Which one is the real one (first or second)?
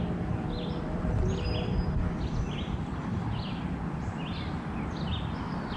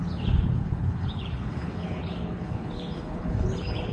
first